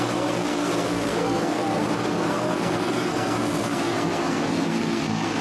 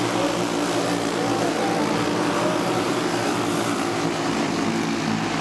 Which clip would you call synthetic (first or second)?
first